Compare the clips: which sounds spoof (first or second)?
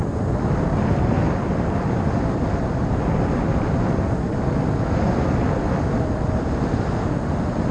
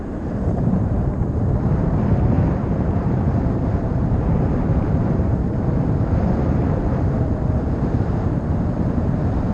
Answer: second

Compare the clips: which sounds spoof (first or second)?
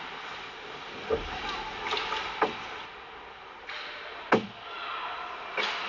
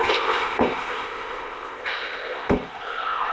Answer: second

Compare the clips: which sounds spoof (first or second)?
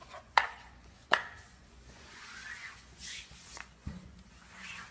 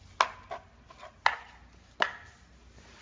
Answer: first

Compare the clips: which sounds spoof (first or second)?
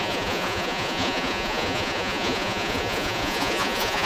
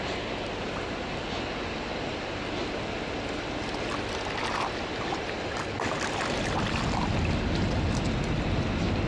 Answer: first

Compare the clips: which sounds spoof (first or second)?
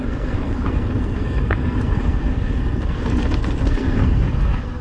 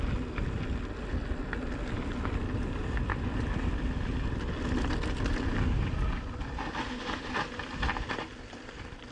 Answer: first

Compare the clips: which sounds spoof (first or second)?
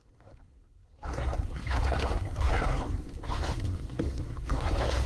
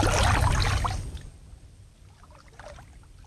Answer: first